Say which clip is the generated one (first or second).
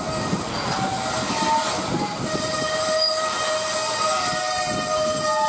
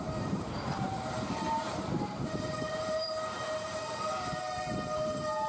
second